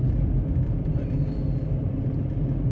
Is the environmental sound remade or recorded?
recorded